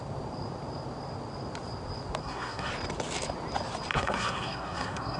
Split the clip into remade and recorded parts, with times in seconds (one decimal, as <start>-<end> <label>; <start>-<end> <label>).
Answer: 0.0-2.2 recorded; 2.2-2.7 remade; 2.7-3.9 recorded; 3.9-5.2 remade